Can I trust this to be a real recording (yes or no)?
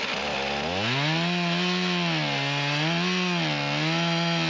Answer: yes